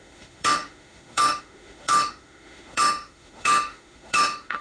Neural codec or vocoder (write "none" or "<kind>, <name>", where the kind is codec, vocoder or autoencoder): autoencoder, DAC-VAE